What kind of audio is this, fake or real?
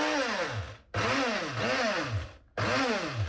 real